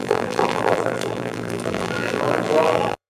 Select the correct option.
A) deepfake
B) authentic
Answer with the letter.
A